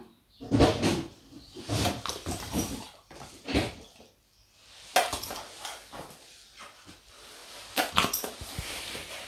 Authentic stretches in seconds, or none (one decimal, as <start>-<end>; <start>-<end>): 0.0-9.3